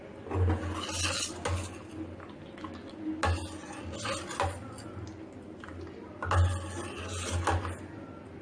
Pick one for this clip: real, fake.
real